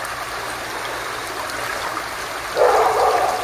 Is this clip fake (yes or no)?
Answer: no